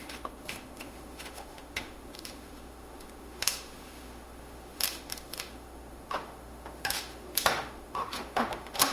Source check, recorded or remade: remade